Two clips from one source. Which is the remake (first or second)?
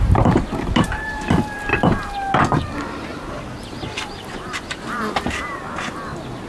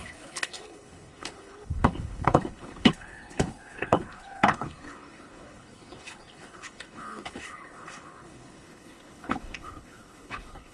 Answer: second